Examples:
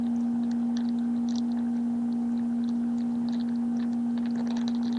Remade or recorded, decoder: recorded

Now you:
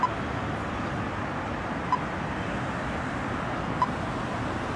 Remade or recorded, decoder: recorded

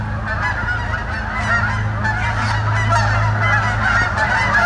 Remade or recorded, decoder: recorded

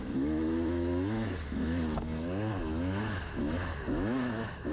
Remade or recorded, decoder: remade, autoencoder, DAC-VAE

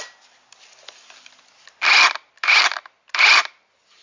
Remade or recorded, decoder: recorded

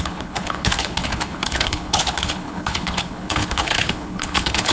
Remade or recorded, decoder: remade, codec, HILCodec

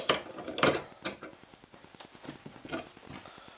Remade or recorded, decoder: recorded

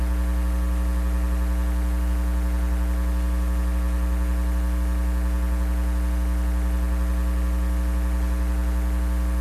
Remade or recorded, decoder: recorded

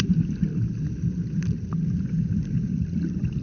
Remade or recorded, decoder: recorded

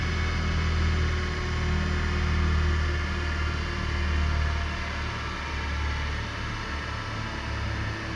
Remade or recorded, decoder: recorded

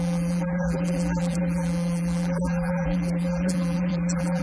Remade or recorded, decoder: remade, vocoder, BigVGAN v2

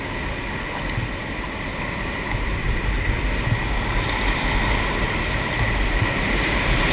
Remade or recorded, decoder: recorded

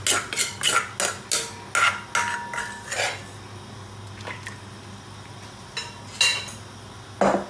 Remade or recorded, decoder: recorded